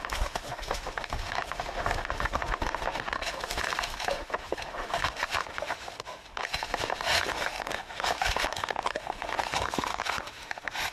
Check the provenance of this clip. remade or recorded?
remade